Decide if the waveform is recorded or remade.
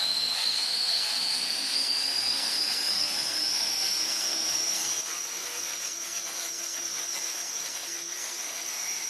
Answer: remade